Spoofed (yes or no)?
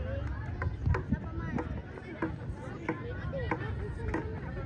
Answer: no